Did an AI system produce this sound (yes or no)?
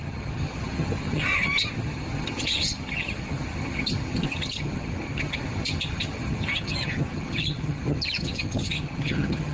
yes